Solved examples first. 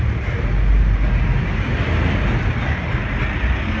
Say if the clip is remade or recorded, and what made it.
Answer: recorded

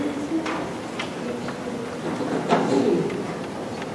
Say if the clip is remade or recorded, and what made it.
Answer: recorded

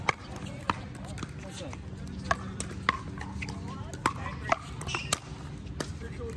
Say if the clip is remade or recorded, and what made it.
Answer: recorded